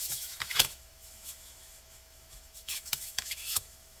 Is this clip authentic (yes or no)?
no